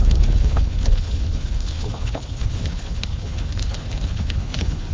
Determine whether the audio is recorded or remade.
remade